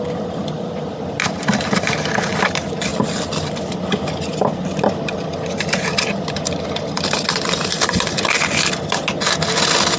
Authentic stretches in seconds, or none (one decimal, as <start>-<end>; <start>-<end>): 0.0-10.0